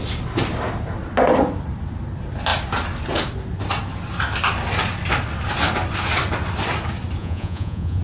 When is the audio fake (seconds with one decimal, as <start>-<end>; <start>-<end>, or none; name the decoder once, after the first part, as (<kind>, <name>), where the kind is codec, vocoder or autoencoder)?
7.2-8.0 (vocoder, Vocos)